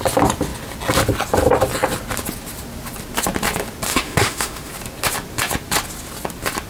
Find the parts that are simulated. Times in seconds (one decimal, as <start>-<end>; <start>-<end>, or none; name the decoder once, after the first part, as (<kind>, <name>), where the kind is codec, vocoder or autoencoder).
3.9-4.7 (autoencoder, DAC-VAE)